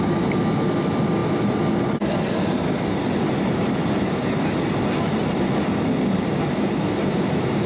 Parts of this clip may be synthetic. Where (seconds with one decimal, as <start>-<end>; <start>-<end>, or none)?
none

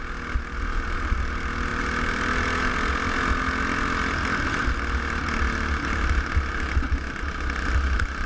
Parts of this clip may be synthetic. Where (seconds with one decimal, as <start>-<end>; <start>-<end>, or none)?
none

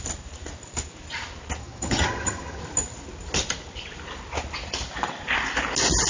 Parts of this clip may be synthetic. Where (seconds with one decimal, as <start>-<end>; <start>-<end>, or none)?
1.6-2.6

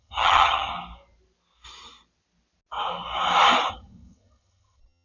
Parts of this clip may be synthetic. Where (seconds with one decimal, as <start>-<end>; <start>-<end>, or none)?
0.0-0.7; 3.7-5.0